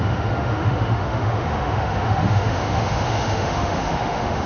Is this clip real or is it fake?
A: fake